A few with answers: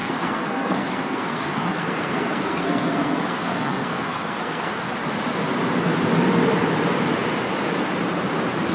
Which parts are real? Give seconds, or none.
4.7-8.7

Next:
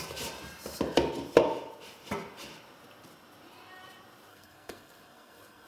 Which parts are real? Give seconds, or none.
0.0-4.3

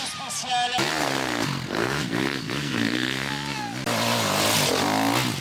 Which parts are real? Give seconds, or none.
0.0-1.0; 3.3-5.4

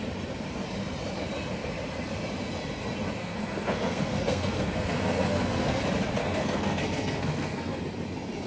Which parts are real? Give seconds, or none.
0.0-3.2; 5.8-6.2; 7.8-8.5

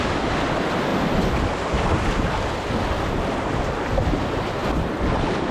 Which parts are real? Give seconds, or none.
0.0-5.5

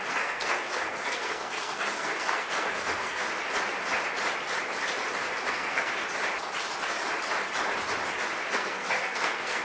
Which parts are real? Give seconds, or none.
3.2-5.5; 6.0-8.5

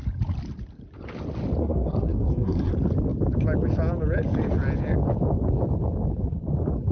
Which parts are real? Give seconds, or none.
0.0-1.6; 2.7-6.9

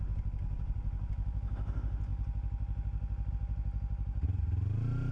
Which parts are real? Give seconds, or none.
0.0-5.1